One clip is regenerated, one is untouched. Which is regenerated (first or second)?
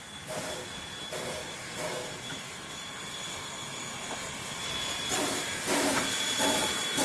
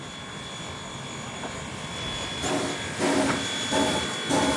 first